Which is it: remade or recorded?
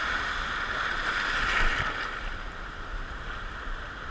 recorded